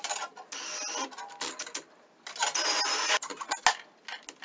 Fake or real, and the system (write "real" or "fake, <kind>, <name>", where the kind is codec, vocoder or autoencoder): real